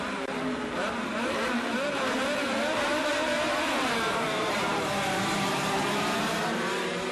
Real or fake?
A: fake